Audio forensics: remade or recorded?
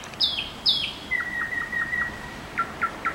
recorded